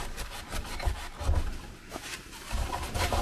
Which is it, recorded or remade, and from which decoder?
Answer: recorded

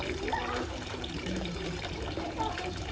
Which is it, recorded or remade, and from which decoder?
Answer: remade, vocoder, BigVGAN v2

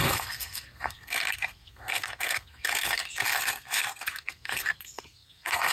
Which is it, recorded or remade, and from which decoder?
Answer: remade, codec, SNAC